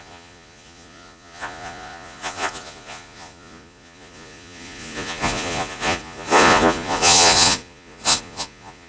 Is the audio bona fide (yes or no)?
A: no